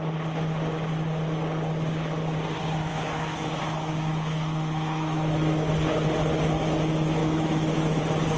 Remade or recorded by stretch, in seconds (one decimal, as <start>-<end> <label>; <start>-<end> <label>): 0.0-2.9 recorded; 2.9-3.6 remade; 3.6-4.1 recorded; 4.1-5.7 remade; 5.7-7.2 recorded; 7.2-8.0 remade; 8.0-8.4 recorded